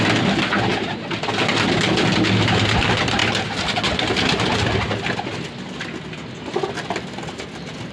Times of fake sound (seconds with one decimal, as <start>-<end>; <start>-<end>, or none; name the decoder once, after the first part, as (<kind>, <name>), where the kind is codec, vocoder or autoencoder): none